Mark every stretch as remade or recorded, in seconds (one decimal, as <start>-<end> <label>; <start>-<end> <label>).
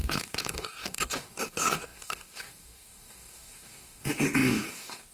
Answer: 0.0-5.1 remade